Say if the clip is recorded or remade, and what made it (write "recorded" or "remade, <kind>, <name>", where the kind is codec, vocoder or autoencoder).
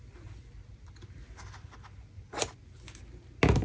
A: recorded